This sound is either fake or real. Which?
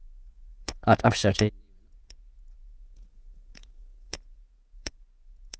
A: fake